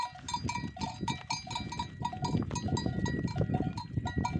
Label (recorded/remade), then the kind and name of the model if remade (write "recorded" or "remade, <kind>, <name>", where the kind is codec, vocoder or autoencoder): recorded